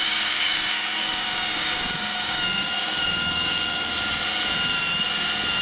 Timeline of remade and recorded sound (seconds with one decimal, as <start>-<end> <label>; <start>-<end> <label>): 0.0-3.9 remade; 3.9-5.6 recorded